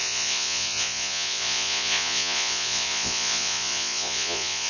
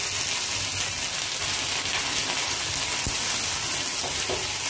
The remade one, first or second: first